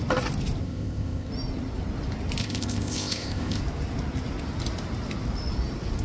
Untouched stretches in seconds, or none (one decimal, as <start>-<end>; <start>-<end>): 0.0-0.6; 1.3-2.4; 3.6-6.0